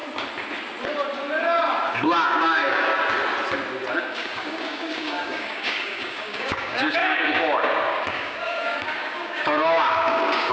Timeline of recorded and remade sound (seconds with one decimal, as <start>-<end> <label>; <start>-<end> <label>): 0.0-1.9 recorded; 1.9-2.9 remade; 2.9-4.0 recorded; 4.0-10.5 remade